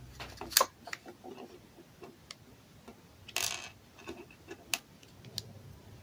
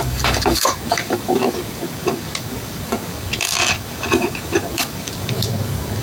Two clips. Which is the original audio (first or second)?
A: first